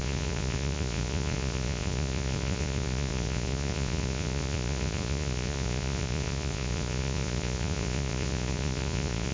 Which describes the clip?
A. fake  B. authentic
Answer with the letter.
A